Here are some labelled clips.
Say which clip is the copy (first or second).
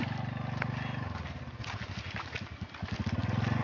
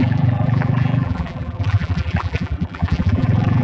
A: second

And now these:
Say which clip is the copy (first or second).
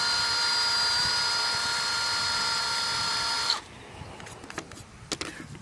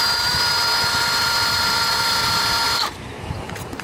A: second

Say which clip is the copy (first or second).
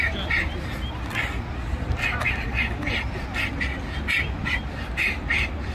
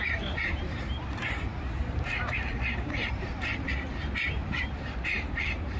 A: second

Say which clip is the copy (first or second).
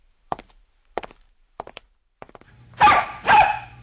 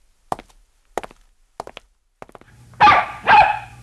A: first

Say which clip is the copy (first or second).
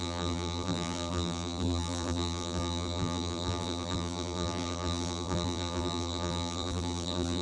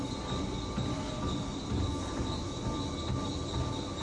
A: first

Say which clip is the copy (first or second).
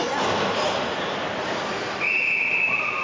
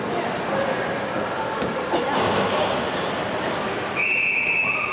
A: first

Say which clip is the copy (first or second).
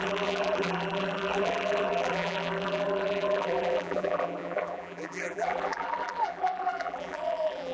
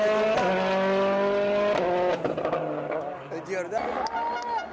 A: first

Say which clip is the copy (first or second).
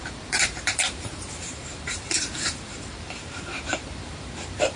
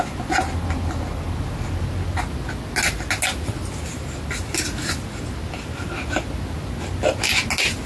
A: first